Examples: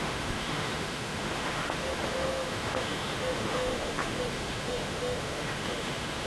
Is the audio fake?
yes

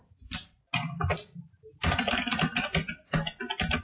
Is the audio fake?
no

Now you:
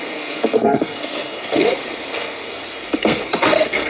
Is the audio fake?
yes